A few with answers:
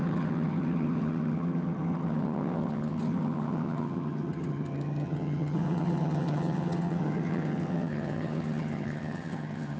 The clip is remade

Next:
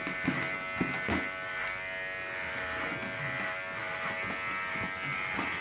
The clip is recorded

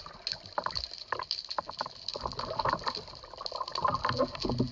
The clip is recorded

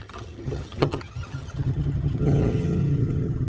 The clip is remade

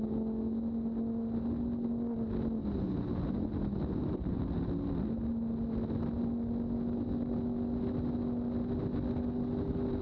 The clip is recorded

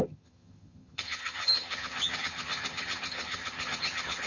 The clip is remade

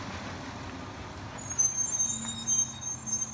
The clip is recorded